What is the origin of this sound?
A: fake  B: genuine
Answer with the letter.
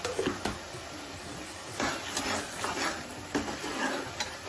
B